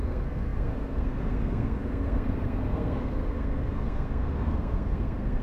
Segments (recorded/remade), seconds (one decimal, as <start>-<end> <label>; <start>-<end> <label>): 0.0-5.4 remade